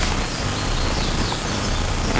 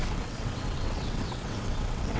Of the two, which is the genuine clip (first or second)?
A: first